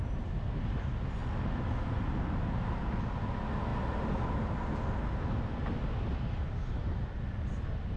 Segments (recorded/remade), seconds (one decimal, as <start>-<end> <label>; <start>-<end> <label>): 0.0-8.0 recorded